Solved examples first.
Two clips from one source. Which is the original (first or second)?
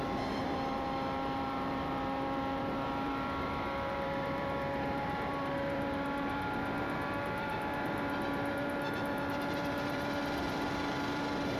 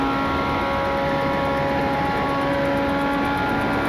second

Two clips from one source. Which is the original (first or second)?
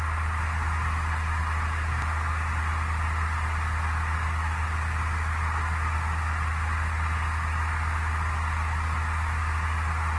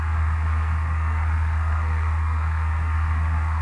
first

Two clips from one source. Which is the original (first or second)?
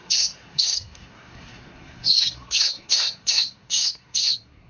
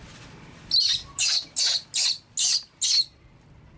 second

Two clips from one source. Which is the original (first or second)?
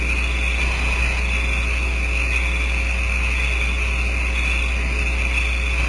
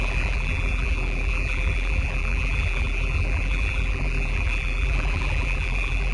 first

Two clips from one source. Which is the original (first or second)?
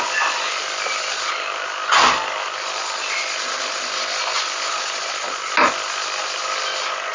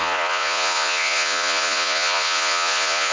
first